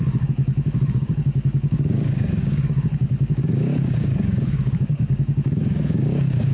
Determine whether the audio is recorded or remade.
remade